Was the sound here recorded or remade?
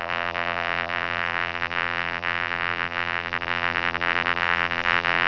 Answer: remade